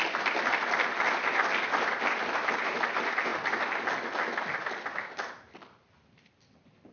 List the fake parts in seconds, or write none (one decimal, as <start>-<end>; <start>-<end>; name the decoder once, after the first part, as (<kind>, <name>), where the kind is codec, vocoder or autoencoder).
none